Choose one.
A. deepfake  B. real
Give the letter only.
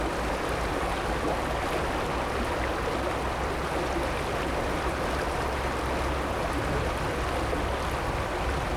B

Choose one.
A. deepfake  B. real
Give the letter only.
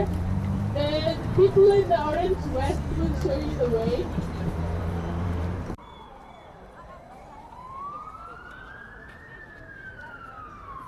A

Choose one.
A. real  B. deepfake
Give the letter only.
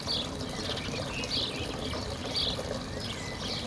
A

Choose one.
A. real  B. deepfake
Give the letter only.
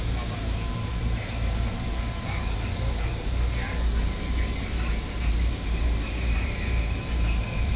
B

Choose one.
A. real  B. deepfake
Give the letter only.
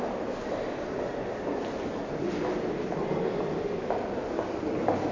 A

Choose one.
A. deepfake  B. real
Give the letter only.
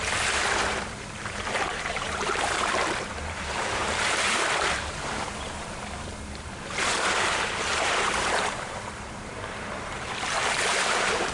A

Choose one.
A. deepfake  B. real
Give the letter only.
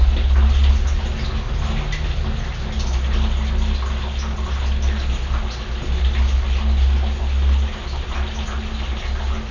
B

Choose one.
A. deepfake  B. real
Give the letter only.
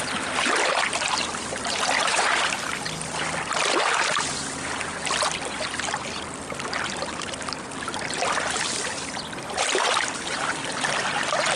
A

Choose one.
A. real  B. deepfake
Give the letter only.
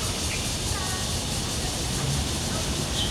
A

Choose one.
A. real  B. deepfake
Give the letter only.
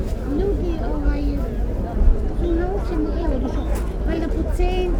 A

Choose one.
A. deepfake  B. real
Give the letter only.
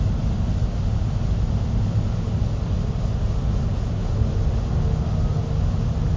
B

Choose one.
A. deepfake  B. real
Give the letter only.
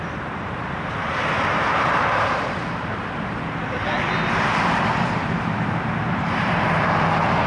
A